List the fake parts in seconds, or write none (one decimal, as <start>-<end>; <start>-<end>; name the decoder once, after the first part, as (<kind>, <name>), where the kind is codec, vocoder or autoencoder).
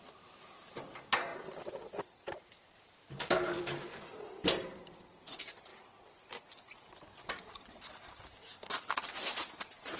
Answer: 0.0-1.3 (vocoder, BigVGAN v2); 2.0-5.7; 6.5-10.0